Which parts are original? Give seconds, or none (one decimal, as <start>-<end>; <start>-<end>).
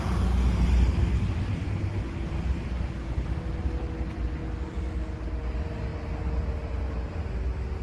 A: 0.0-7.8